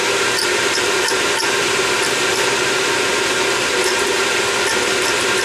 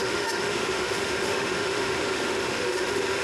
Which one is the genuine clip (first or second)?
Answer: first